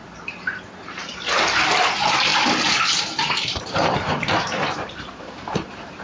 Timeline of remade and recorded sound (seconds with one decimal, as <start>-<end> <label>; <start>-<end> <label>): 0.0-6.0 remade